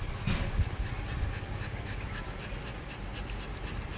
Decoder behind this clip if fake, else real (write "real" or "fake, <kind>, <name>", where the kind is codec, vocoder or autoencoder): real